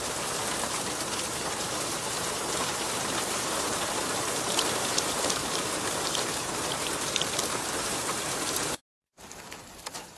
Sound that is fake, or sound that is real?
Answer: fake